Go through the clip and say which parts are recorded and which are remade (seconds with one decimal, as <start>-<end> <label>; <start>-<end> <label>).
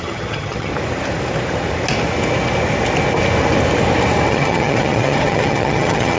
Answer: 0.0-0.7 remade; 0.7-4.3 recorded; 4.3-6.2 remade